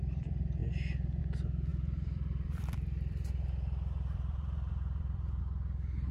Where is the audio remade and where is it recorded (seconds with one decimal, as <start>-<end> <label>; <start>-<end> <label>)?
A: 0.0-1.7 recorded; 1.7-5.4 remade; 5.4-6.1 recorded